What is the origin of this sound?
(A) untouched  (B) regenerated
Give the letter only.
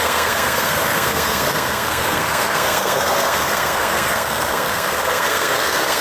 B